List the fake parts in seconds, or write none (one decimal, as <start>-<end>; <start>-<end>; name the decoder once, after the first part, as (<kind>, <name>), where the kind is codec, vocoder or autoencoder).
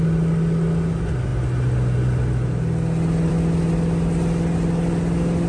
none